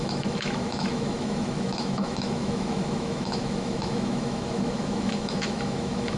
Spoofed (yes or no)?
yes